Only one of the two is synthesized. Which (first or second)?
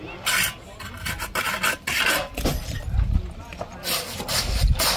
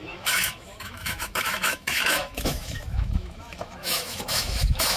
second